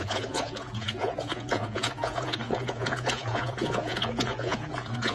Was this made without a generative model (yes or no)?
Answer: no